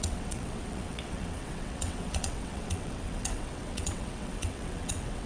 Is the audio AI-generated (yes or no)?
yes